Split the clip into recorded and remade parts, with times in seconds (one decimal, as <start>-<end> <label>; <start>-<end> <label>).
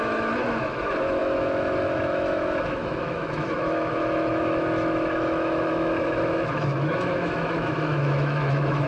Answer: 0.0-8.9 remade